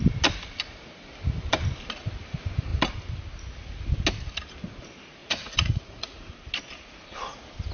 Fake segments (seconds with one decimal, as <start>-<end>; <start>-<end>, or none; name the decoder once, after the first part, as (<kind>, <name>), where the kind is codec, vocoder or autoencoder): 5.2-6.3 (vocoder, Vocos)